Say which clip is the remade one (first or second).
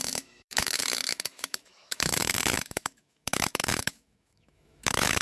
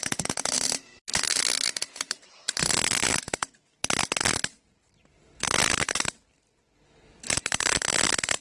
first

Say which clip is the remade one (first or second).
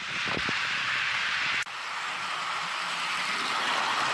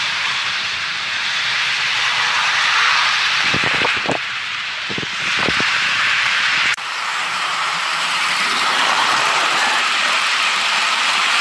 second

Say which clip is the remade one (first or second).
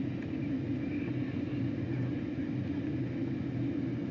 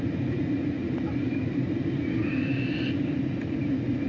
second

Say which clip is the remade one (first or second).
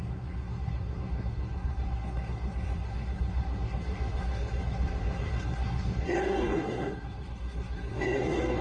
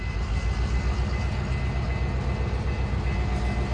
first